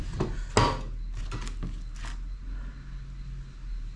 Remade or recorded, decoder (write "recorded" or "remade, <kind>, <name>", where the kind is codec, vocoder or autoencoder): recorded